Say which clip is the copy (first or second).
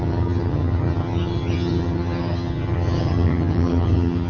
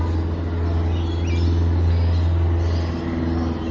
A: first